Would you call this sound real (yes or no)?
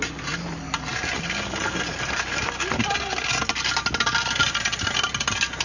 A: yes